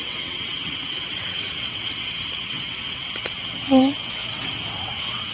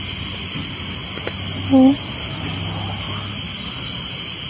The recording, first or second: second